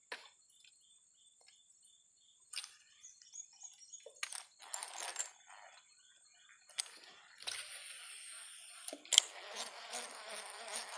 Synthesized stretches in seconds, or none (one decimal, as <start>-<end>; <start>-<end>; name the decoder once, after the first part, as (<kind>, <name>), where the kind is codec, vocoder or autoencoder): none